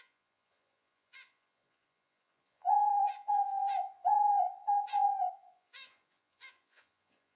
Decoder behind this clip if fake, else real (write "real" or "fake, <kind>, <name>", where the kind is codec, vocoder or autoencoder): fake, vocoder, Vocos